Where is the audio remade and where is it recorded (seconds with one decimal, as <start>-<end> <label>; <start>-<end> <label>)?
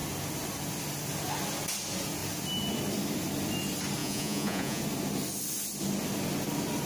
0.0-4.0 recorded; 4.0-4.8 remade; 4.8-6.9 recorded